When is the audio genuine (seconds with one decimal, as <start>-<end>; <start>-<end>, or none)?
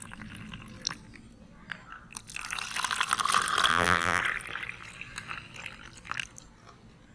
0.0-3.7; 4.2-7.1